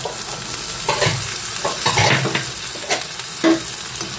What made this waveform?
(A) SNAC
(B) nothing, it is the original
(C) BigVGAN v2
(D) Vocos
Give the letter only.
B